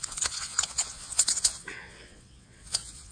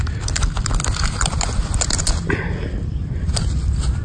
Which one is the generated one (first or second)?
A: first